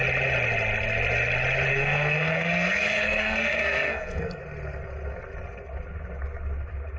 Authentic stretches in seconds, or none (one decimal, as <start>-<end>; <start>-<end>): 0.0-1.7; 4.4-7.0